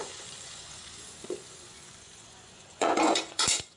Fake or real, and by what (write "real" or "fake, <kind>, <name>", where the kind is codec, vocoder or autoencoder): fake, vocoder, Vocos